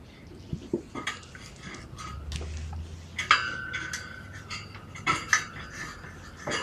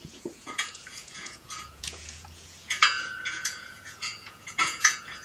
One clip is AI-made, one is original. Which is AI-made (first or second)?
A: second